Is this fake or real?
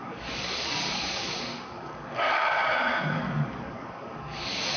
fake